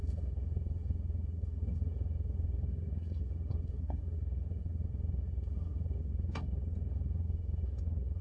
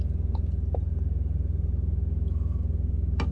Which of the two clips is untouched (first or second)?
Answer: second